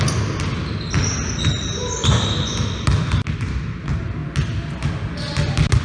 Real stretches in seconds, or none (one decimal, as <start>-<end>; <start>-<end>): 0.0-5.8